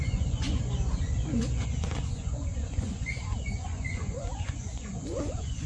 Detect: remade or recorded remade